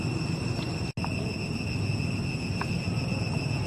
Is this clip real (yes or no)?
yes